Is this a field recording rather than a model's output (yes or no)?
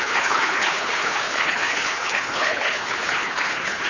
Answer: no